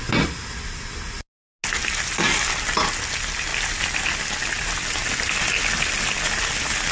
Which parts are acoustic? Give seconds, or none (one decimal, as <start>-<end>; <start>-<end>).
0.0-6.9